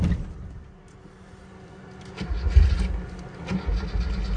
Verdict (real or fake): real